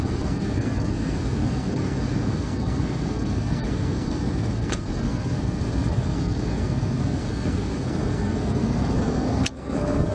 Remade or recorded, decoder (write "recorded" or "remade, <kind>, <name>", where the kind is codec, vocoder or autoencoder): remade, codec, SNAC